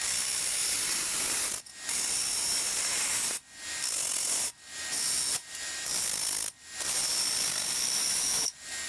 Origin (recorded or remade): recorded